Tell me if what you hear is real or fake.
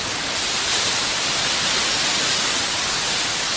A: real